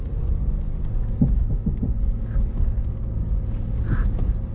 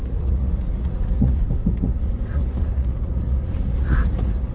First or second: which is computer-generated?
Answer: second